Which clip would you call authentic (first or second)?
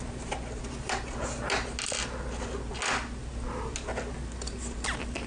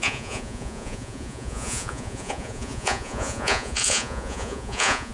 first